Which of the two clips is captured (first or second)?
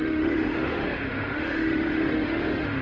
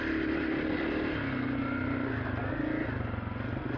second